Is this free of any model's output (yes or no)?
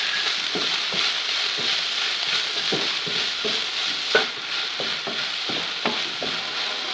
yes